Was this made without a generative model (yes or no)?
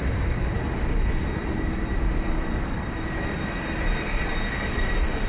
yes